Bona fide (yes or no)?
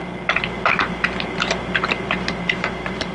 yes